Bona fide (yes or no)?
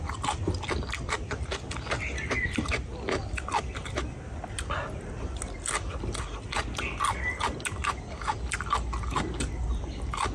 yes